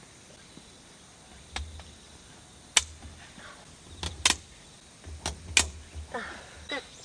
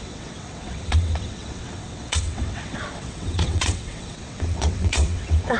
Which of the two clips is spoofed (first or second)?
second